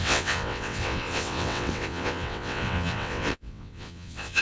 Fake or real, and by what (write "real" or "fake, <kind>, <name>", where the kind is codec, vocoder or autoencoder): fake, vocoder, WaveNeXt